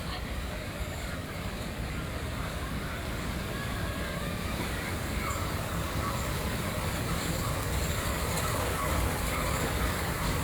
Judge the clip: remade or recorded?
remade